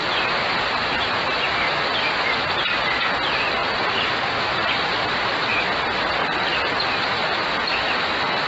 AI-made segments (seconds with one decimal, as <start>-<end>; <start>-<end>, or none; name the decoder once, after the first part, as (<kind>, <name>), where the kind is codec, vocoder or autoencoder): 3.6-4.3 (vocoder, BigVGAN v2)